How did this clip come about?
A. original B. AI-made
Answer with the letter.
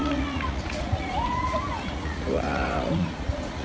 B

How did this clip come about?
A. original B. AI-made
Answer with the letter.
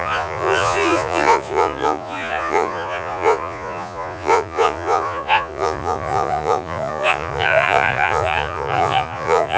B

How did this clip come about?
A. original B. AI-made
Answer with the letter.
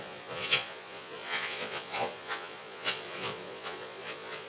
B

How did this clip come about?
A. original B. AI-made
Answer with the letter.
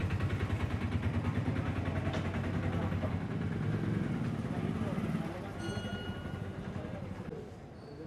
A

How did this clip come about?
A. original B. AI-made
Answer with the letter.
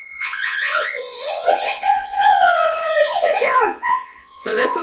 B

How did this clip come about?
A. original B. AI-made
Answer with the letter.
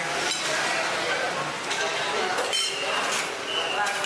A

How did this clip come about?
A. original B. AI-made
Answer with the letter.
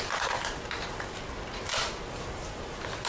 A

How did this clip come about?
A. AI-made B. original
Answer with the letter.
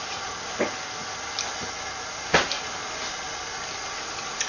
B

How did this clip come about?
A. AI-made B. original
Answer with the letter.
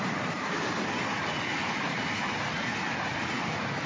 B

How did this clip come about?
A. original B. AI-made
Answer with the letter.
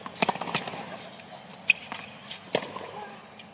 A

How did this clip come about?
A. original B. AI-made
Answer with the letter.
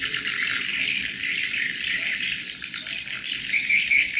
A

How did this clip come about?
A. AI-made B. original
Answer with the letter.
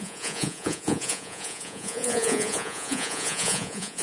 A